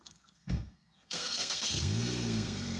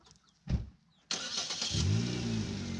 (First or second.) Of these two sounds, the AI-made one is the first